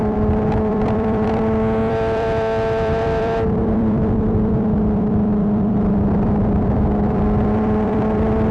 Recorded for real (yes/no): no